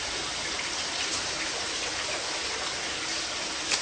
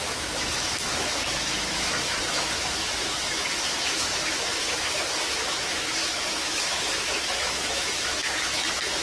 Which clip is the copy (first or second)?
second